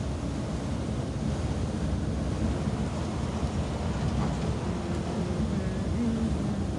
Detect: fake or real real